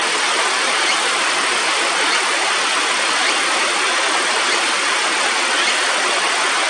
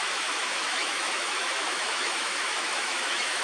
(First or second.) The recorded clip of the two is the first